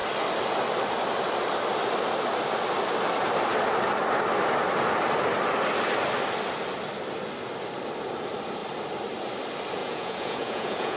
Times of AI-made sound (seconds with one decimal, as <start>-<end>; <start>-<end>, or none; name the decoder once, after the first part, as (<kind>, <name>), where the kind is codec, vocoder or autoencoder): 9.8-11.0 (vocoder, Vocos)